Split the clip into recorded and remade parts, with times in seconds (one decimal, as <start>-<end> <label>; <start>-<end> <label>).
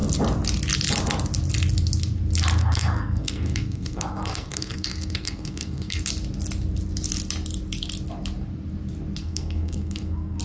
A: 0.0-2.6 recorded; 2.6-6.1 remade; 6.1-9.2 recorded; 9.2-10.4 remade